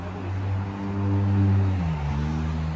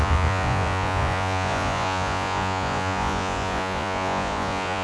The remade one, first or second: second